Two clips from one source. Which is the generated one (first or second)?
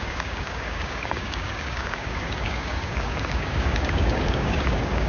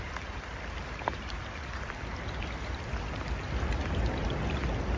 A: first